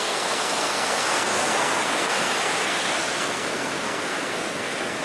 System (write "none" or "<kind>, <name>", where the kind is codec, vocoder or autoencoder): codec, SNAC